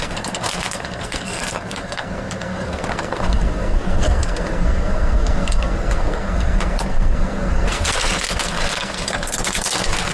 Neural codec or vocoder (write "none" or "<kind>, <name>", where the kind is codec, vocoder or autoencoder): codec, SNAC